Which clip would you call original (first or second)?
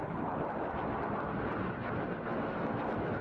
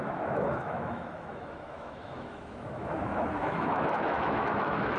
first